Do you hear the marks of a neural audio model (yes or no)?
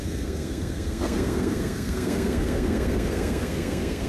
yes